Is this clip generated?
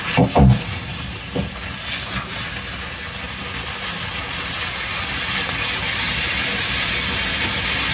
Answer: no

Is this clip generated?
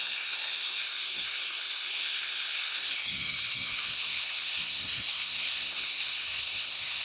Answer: yes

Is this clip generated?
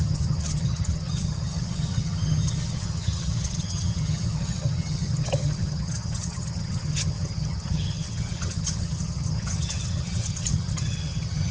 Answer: yes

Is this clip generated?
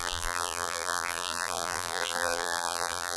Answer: yes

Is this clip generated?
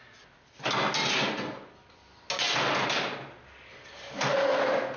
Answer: no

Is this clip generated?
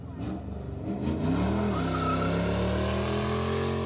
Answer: no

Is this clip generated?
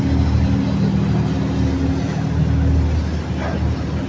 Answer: no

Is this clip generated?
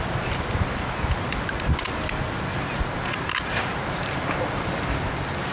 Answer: no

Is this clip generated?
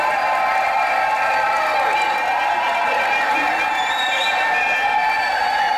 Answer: no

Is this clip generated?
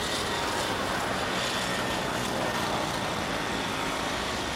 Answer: no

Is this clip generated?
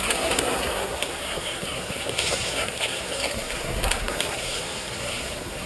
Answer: yes